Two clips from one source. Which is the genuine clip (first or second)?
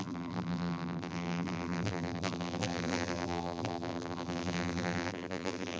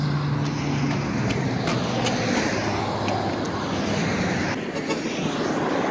second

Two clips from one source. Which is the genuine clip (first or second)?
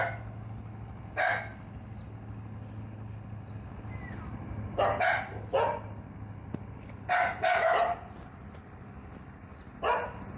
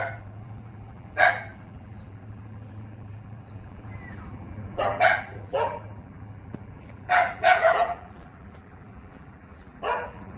first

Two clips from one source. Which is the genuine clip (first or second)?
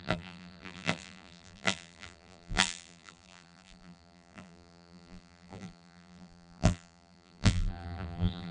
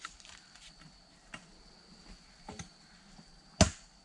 second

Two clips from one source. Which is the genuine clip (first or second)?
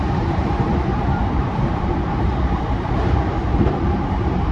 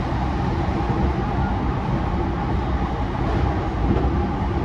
second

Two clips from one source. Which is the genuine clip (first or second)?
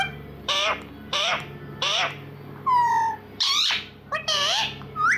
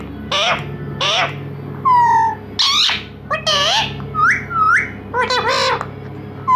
second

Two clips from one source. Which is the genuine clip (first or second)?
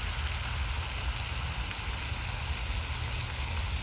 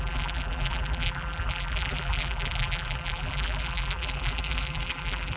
first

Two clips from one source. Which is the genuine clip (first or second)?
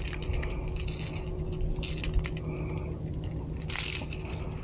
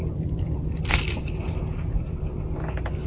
first